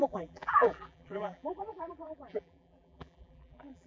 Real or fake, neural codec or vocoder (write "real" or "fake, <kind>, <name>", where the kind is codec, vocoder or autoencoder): fake, vocoder, BigVGAN v2